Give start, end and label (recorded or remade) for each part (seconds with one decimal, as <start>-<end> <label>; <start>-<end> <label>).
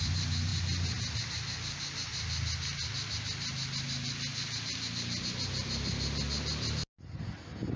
0.0-7.8 recorded